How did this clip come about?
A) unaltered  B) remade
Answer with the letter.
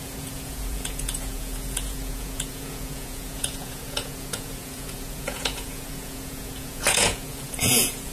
B